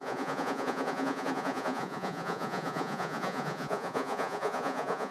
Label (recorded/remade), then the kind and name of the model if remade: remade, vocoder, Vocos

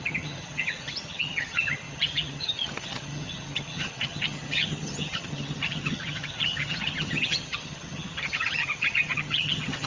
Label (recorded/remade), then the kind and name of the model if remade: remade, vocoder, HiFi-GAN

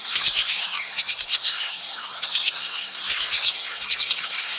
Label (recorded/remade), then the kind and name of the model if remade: remade, codec, SNAC